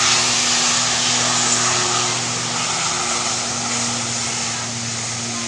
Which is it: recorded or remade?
recorded